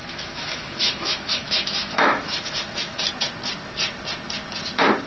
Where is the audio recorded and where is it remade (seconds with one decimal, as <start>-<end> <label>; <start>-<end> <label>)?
0.0-3.1 remade; 3.1-5.1 recorded